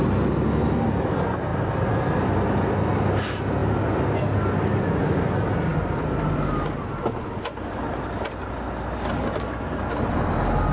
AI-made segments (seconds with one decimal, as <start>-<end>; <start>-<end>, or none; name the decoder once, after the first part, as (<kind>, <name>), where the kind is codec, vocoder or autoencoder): none

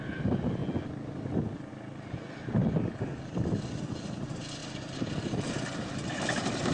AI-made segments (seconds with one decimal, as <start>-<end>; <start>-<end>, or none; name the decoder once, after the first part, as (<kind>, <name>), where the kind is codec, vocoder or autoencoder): 0.0-0.6 (vocoder, BigVGAN v2); 1.7-2.6; 4.0-6.7

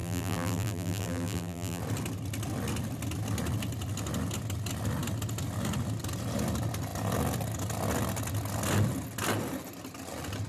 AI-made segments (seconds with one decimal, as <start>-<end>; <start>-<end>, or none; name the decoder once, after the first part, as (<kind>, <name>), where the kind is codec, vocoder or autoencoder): 0.0-1.8 (vocoder, BigVGAN v2)